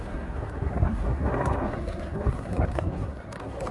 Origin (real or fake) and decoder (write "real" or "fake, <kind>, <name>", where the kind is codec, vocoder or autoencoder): fake, codec, SNAC